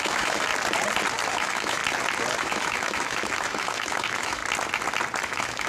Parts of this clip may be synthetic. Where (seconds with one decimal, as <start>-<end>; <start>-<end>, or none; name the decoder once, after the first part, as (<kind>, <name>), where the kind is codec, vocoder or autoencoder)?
0.0-0.5 (autoencoder, DAC-VAE); 1.3-1.8; 2.4-4.4; 5.2-5.7